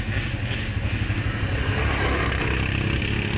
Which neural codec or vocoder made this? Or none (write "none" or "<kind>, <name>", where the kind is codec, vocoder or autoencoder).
none